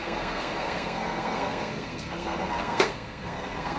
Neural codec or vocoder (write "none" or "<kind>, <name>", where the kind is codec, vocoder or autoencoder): codec, SNAC